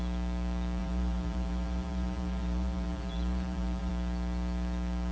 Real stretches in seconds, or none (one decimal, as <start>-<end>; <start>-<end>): 0.0-0.8; 3.9-5.1